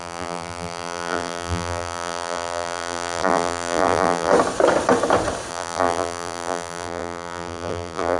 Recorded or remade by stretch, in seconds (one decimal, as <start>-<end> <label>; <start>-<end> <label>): 0.0-4.3 remade; 4.3-5.5 recorded; 5.5-8.2 remade